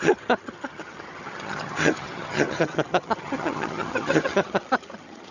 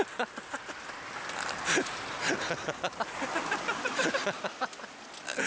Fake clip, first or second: first